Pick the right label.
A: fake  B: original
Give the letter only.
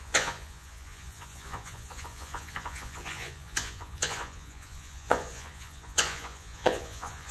A